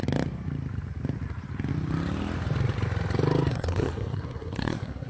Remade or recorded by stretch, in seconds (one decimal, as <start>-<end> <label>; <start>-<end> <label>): 0.0-3.5 recorded; 3.5-5.1 remade